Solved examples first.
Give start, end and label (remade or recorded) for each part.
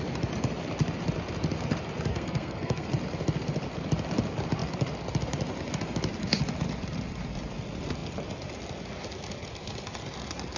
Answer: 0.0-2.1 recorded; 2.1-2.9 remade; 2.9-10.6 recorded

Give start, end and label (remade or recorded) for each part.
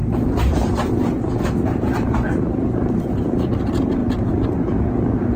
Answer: 0.0-3.2 remade; 3.2-5.4 recorded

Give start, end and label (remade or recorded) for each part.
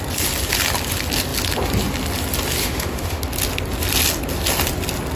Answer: 0.0-2.6 recorded; 2.6-3.2 remade; 3.2-5.2 recorded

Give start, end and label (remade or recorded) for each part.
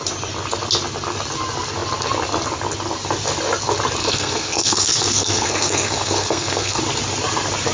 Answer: 0.0-4.0 recorded; 4.0-6.8 remade; 6.8-7.7 recorded